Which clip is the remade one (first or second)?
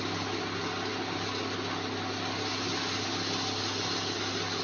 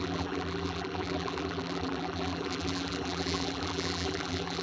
second